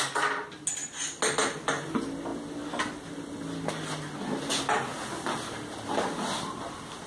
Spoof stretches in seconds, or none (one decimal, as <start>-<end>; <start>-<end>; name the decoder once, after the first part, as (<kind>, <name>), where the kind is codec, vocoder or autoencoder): none